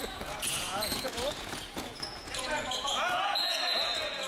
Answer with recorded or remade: remade